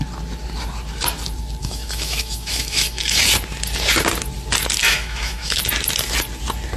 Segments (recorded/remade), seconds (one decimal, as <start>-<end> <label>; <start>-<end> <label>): 0.0-1.6 recorded; 1.6-3.2 remade; 3.2-4.8 recorded; 4.8-5.6 remade; 5.6-6.8 recorded